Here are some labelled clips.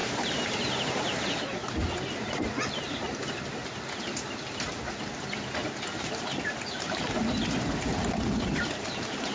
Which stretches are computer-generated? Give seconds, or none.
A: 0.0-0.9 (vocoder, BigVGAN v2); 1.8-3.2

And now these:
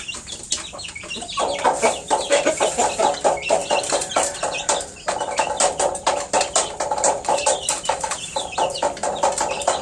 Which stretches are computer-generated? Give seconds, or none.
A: 3.6-8.8 (vocoder, BigVGAN v2)

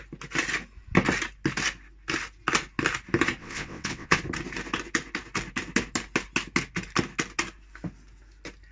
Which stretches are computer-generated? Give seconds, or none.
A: 3.4-4.2 (vocoder, WaveNeXt)